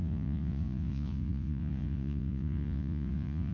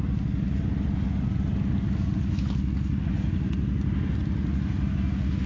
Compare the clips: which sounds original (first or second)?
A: second